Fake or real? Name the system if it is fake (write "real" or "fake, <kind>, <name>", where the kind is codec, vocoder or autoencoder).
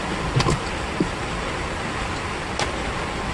real